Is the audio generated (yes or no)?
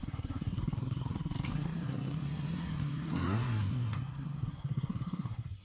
yes